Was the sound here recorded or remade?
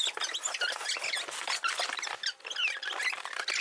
recorded